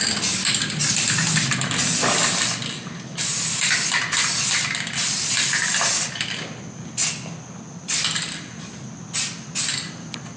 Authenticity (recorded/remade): recorded